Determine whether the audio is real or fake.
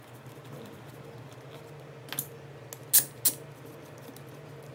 real